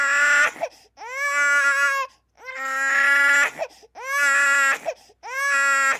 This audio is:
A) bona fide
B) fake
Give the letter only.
A